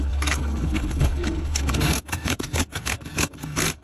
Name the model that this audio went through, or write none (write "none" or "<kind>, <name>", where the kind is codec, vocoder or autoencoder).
codec, SNAC